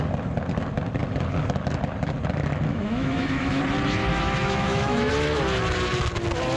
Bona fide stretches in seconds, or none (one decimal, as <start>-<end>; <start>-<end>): 0.0-2.7; 3.6-4.1; 5.1-6.6